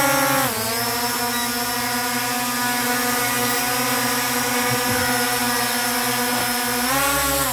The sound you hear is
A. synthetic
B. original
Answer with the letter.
B